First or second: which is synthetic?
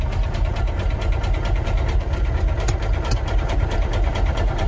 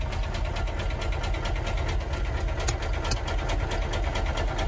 first